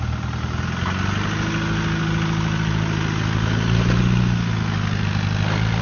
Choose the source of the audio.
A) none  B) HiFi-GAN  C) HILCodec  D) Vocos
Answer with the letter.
A